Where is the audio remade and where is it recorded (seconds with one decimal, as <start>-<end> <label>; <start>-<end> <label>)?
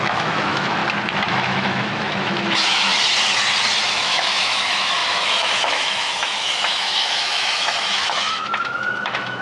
0.0-0.8 remade; 0.8-1.3 recorded; 1.3-2.9 remade; 2.9-3.9 recorded; 3.9-9.4 remade